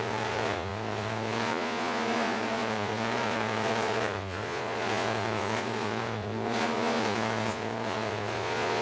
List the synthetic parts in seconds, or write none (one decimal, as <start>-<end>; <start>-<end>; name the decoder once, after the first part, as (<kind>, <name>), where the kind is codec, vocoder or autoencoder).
0.0-8.8 (vocoder, Vocos)